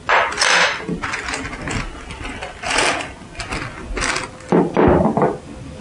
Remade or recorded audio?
recorded